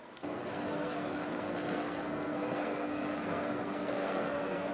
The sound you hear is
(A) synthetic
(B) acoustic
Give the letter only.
A